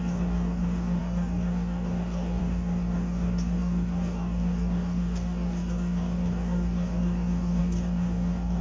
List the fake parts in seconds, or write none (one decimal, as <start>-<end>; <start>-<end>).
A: 0.0-8.6

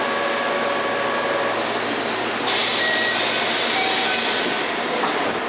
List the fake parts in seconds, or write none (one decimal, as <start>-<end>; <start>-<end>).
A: none

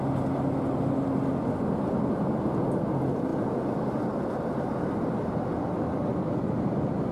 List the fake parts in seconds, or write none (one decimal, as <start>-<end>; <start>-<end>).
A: none

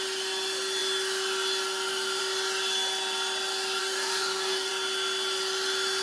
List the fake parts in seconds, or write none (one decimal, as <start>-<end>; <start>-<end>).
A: 3.8-4.7

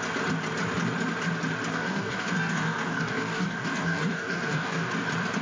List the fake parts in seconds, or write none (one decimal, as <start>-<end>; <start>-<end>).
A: 1.7-4.9